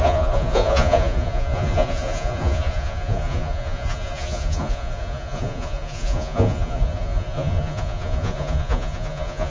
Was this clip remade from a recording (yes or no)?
yes